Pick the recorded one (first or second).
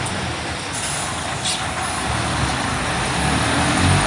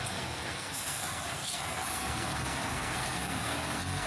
first